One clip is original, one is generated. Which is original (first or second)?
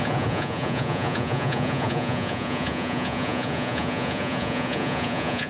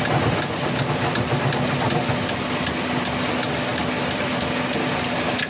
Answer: second